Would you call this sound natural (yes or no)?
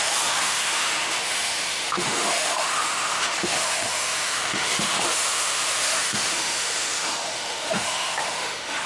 no